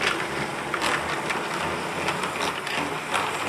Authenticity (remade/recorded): recorded